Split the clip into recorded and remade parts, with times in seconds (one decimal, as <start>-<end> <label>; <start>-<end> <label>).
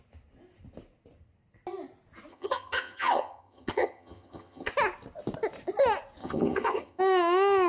0.0-2.3 recorded; 2.3-4.7 remade; 4.7-6.2 recorded; 6.2-7.0 remade; 7.0-7.7 recorded